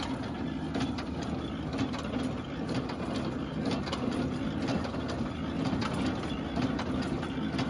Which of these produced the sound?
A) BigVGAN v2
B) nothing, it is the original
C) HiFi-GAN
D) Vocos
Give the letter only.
B